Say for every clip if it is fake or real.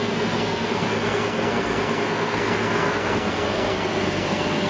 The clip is fake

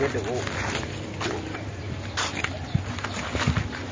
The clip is real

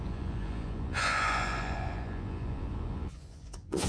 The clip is fake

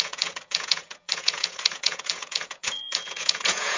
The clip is fake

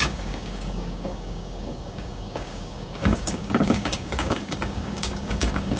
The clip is fake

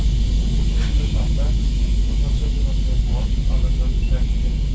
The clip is real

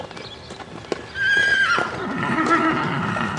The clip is real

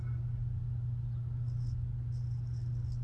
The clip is real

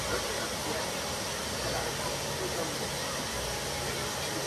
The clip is real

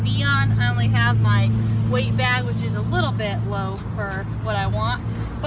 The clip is real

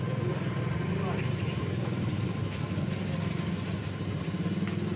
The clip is real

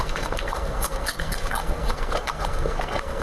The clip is fake